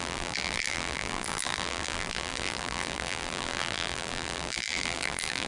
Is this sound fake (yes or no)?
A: yes